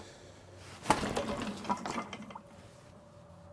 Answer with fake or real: real